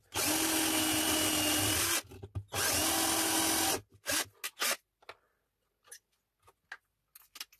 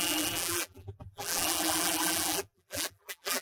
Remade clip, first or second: second